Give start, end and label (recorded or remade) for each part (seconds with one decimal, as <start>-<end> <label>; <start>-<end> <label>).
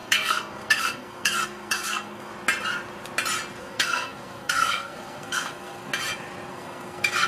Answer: 0.0-2.3 remade; 2.3-3.6 recorded; 3.6-5.9 remade; 5.9-6.5 recorded; 6.5-7.3 remade